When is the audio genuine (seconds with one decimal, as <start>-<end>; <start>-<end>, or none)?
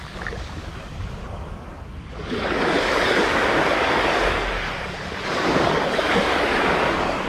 none